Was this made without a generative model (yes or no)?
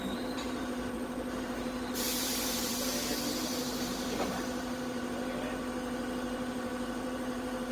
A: no